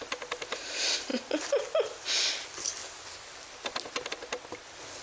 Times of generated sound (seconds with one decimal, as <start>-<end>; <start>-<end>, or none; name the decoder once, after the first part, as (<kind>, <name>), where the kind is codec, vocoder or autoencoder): none